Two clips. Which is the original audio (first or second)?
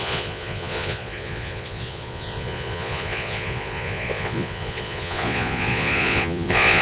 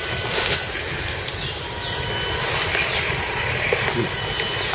second